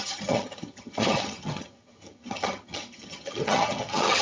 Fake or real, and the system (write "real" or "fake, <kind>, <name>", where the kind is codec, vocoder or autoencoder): fake, vocoder, HiFi-GAN